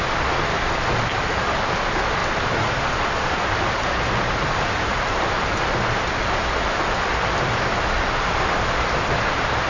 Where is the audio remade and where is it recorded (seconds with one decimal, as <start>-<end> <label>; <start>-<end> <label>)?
0.0-2.2 recorded; 2.2-5.6 remade; 5.6-9.7 recorded